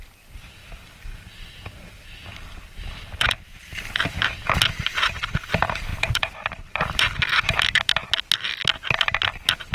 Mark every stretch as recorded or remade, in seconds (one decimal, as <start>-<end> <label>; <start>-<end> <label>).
0.0-0.6 recorded; 0.6-4.0 remade; 4.0-5.9 recorded; 5.9-7.8 remade; 7.8-9.7 recorded

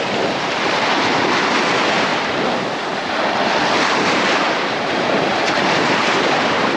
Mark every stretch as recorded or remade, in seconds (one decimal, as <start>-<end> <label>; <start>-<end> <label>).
0.0-2.1 remade; 2.1-3.8 recorded; 3.8-6.8 remade